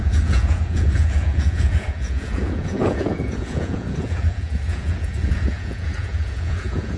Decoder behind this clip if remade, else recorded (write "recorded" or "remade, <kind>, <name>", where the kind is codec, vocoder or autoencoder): remade, vocoder, Vocos